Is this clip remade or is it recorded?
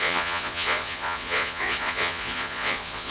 remade